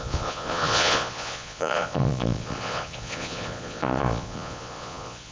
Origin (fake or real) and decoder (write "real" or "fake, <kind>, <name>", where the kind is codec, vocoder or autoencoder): fake, vocoder, Vocos